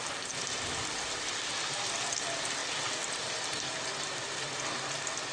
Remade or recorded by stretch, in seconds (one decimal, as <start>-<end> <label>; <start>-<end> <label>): 0.0-5.3 recorded